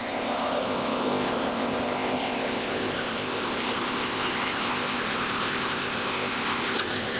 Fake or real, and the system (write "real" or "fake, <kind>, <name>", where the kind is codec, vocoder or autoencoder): fake, codec, ZipCodec